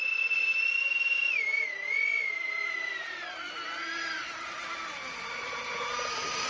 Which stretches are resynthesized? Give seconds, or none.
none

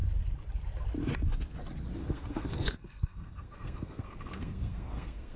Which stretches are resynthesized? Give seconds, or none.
2.0-5.4 (codec, SNAC)